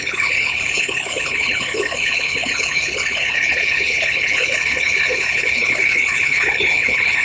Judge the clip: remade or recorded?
remade